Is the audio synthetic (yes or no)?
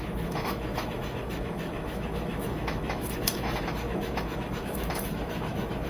yes